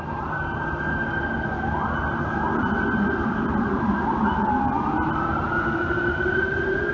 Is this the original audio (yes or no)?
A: yes